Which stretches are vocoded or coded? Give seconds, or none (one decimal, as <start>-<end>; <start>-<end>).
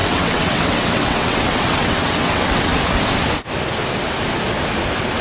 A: 0.0-2.7